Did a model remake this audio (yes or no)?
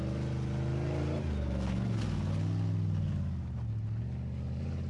no